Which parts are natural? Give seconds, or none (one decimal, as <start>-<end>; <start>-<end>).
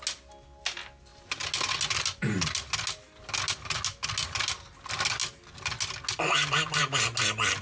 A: 0.0-7.6